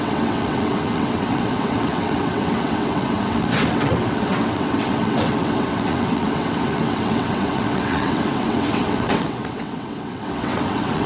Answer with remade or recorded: remade